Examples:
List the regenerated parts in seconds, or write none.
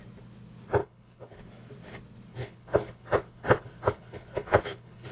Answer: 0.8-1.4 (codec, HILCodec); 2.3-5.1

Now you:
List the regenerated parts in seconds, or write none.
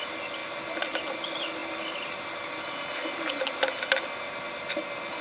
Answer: none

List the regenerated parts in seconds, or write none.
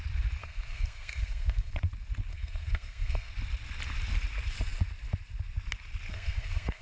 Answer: 0.4-1.7 (codec, SNAC); 2.3-3.3; 6.1-6.8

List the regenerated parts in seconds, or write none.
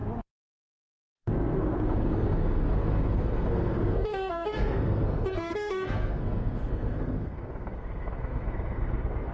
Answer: 0.5-9.3 (codec, SNAC)